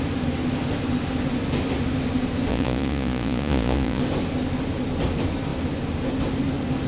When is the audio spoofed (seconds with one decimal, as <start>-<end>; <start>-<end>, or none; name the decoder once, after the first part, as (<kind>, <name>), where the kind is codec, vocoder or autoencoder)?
2.5-4.0 (vocoder, Vocos)